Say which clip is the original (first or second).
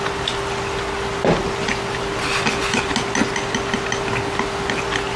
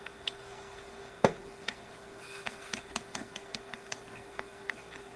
first